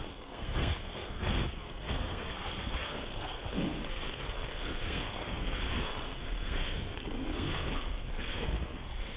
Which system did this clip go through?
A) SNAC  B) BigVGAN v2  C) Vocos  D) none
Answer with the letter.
A